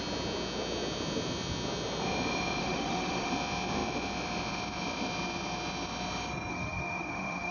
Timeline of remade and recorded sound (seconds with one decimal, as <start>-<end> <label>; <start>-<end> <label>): 0.0-2.6 recorded; 2.6-3.3 remade; 3.3-6.5 recorded; 6.5-7.5 remade